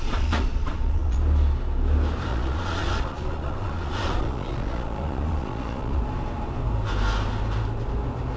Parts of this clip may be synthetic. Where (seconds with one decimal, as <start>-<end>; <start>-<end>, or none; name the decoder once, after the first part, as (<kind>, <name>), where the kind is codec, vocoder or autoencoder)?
0.0-1.2 (vocoder, Vocos); 2.3-6.0